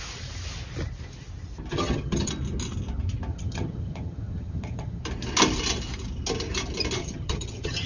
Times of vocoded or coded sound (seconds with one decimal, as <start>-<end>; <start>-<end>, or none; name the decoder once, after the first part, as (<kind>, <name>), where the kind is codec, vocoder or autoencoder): 1.7-2.3 (vocoder, HiFi-GAN); 3.3-5.0; 7.0-7.9